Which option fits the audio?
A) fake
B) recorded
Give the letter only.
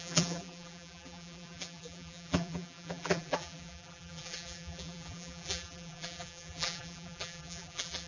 A